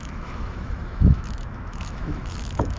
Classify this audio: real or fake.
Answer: fake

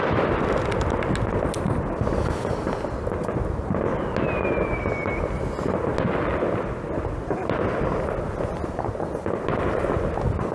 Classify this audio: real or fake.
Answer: real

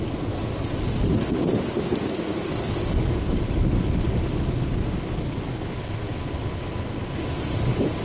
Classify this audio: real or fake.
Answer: real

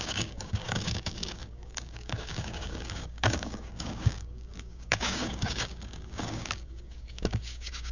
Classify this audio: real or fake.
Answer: fake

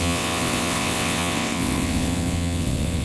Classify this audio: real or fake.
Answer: fake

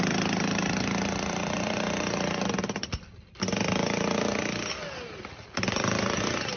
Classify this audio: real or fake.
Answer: fake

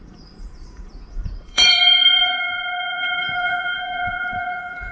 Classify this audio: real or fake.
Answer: fake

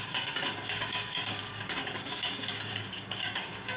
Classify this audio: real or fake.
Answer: fake